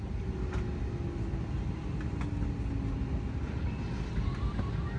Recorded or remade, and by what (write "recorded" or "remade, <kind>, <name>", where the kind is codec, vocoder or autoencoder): recorded